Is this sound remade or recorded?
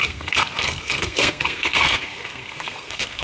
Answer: remade